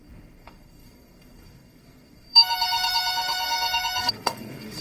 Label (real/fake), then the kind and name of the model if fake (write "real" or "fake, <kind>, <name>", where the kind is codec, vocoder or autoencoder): fake, codec, SNAC